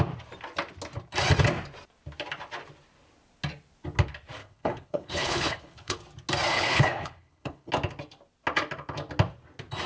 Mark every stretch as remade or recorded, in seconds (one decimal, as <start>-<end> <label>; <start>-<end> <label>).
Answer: 0.0-4.4 recorded; 4.4-6.0 remade; 6.0-6.5 recorded; 6.5-7.7 remade; 7.7-9.9 recorded